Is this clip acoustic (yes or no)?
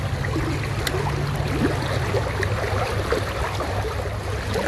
yes